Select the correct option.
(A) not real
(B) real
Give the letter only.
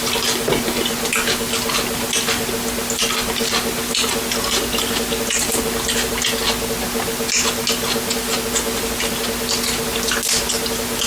B